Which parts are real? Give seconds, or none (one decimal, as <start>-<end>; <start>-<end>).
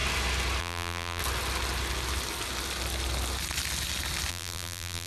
0.0-0.6; 1.2-4.3